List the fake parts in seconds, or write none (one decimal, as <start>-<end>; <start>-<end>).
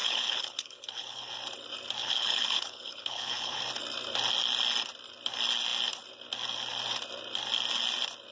0.0-1.3; 2.0-3.6